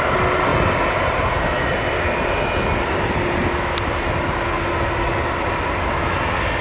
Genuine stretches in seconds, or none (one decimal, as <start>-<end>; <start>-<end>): 0.0-6.6